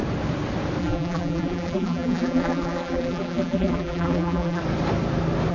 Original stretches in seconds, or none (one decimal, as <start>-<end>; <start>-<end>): 0.0-0.8; 4.6-5.5